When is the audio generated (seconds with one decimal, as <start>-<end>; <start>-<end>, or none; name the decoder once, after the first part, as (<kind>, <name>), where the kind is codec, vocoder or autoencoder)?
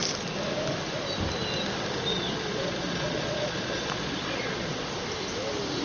2.1-4.9 (vocoder, Vocos)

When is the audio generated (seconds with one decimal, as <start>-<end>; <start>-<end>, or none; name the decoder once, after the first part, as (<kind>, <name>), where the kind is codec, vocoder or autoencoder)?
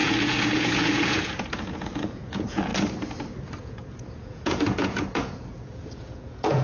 0.0-2.7 (vocoder, Vocos); 3.6-6.6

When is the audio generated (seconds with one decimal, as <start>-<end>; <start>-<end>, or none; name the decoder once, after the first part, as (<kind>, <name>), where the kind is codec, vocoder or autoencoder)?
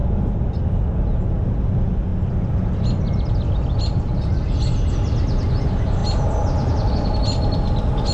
0.0-0.6 (vocoder, BigVGAN v2); 2.1-3.3; 6.0-6.7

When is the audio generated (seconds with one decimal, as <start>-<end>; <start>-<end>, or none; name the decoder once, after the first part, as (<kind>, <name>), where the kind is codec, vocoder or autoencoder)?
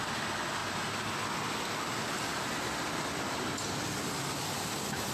none